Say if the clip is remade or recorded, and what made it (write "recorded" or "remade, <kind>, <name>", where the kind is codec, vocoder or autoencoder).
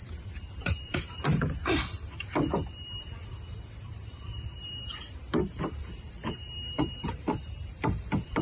remade, vocoder, BigVGAN v2